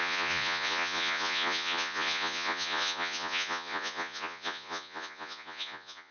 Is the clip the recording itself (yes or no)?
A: no